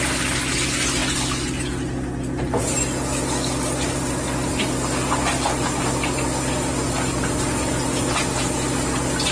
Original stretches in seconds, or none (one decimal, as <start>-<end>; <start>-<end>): 0.0-9.3